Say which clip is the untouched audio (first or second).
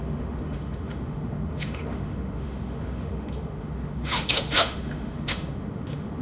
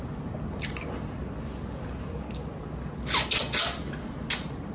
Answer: second